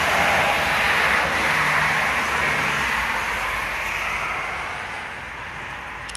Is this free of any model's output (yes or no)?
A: yes